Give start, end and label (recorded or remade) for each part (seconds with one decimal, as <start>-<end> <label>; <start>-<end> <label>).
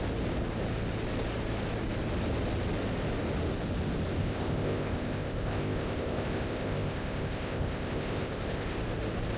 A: 0.0-4.2 recorded; 4.2-8.8 remade; 8.8-9.4 recorded